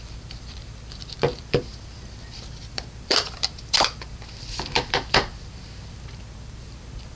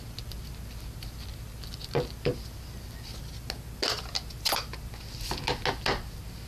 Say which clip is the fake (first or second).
first